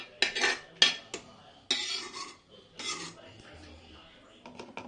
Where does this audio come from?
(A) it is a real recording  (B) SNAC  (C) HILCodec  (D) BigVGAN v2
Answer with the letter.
A